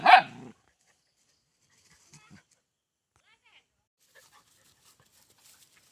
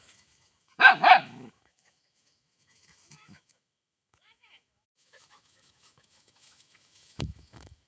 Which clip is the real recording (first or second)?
first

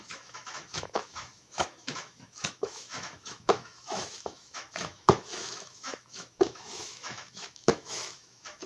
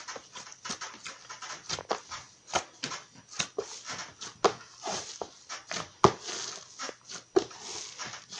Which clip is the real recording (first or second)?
second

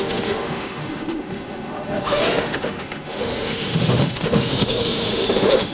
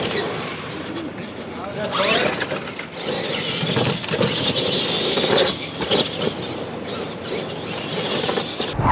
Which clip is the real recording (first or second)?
second